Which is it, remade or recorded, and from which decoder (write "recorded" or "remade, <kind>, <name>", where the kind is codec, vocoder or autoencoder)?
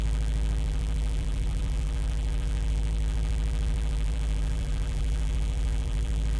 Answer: remade, vocoder, BigVGAN v2